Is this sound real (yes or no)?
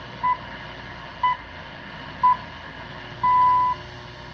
yes